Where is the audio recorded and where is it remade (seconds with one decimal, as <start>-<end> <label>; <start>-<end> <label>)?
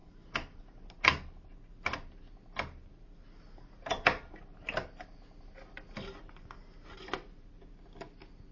0.0-0.6 remade; 0.6-8.5 recorded